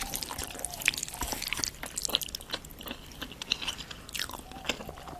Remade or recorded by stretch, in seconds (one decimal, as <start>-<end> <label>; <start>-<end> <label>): 0.0-5.2 recorded